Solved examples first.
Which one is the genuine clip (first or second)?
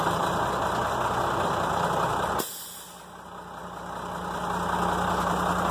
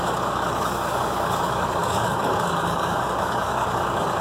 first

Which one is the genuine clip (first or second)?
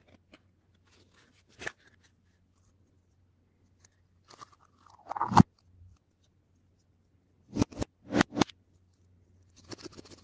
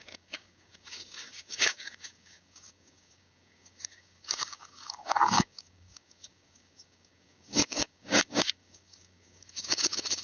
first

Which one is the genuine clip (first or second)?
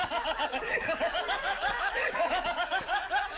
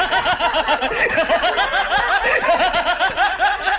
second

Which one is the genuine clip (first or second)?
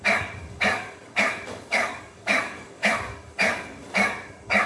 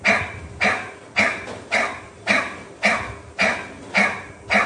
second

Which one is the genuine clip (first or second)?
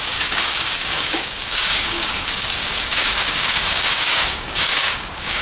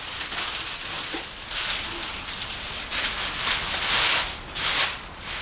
second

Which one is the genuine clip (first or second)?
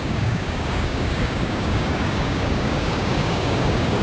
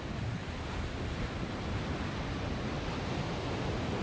second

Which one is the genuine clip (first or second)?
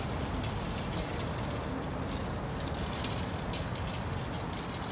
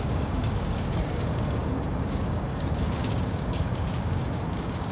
first